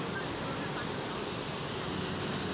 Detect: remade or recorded recorded